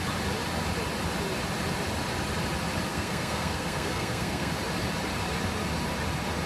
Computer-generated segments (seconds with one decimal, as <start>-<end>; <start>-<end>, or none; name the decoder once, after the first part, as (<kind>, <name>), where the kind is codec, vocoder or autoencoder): 2.9-4.5 (codec, SNAC)